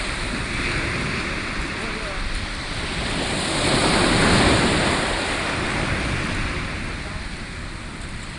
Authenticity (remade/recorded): recorded